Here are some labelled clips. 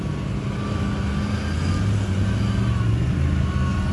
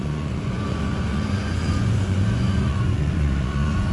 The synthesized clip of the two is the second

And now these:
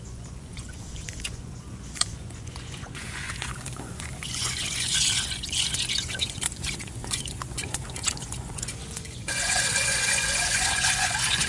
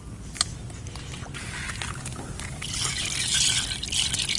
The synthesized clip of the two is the first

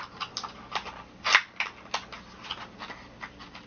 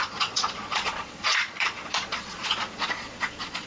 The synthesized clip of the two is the second